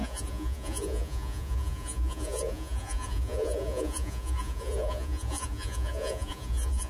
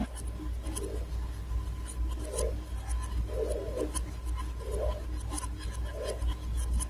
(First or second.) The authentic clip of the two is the second